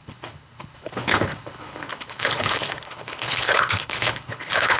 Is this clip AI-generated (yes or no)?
yes